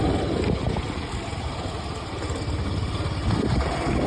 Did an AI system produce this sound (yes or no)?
no